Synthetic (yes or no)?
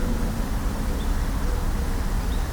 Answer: no